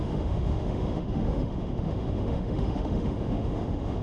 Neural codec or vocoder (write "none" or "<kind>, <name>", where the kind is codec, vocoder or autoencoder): autoencoder, DAC-VAE